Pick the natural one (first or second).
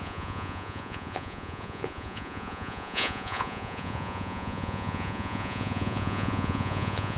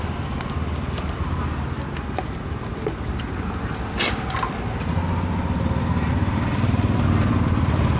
second